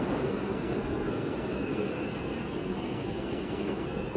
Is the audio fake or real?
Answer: fake